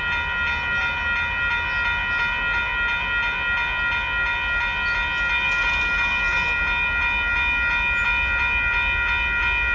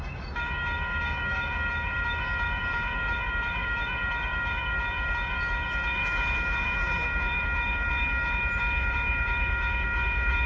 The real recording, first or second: first